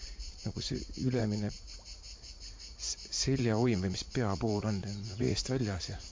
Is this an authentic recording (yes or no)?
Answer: no